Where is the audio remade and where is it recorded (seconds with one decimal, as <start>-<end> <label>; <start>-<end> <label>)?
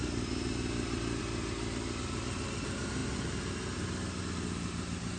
0.0-5.2 recorded